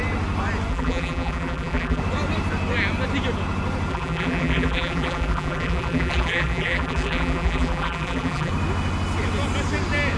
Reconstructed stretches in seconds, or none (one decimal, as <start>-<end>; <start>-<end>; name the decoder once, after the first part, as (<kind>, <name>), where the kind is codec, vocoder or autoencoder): 0.7-2.0 (vocoder, BigVGAN v2); 3.9-8.5